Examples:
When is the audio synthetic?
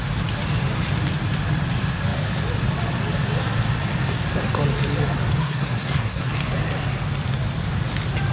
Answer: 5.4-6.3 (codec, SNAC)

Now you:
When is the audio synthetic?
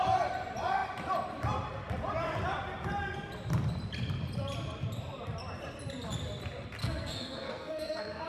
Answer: 6.8-8.3 (codec, SNAC)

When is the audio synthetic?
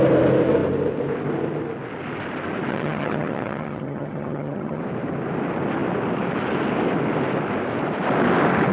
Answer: 2.7-4.8 (vocoder, HiFi-GAN)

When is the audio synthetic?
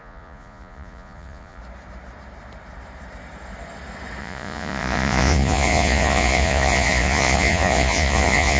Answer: 0.0-1.6 (vocoder, Vocos); 4.2-8.6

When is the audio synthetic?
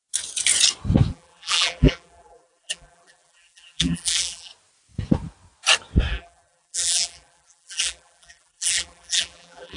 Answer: 1.1-4.5 (vocoder, BigVGAN v2); 6.1-9.8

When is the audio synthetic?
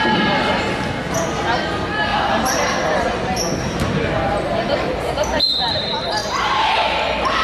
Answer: 2.1-5.8 (vocoder, BigVGAN v2); 6.2-6.7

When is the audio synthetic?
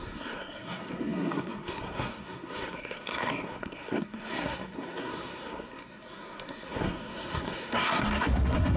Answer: 0.0-8.8 (codec, SNAC)